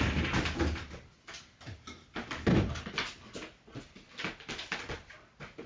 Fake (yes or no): no